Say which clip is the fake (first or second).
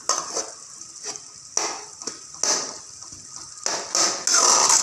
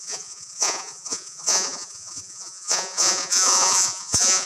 second